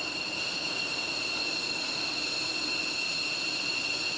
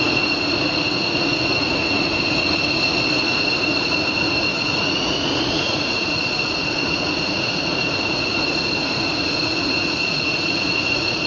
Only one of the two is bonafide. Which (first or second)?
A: first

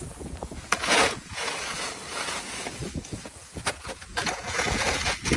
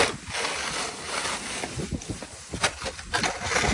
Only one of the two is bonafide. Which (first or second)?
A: second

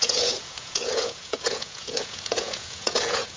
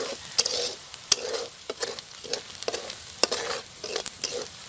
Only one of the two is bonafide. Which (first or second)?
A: second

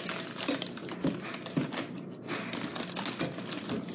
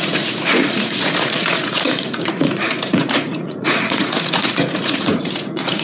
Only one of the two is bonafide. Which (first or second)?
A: first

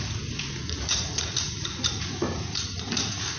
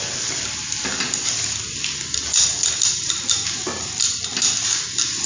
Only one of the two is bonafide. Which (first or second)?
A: second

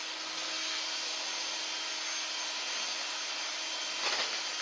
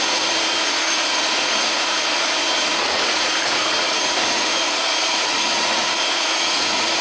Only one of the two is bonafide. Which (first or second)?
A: first